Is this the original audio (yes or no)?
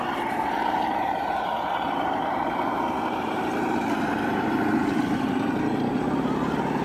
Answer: no